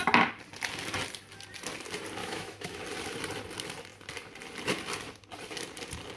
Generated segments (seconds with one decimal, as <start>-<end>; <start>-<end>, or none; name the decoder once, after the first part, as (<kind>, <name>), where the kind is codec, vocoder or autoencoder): 2.2-2.8 (autoencoder, DAC-VAE)